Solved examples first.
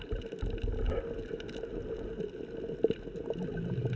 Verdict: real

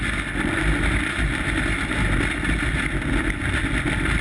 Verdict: real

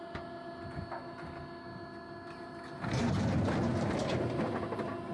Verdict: real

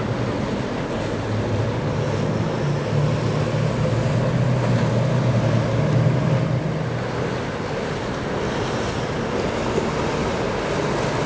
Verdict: real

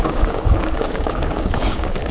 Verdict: fake